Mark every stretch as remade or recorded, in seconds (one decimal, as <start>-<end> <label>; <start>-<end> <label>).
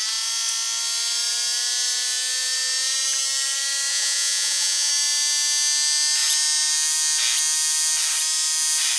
0.0-3.9 recorded; 3.9-4.9 remade; 4.9-9.0 recorded